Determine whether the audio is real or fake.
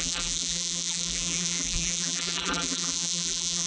fake